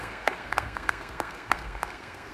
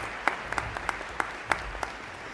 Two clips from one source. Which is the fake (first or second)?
first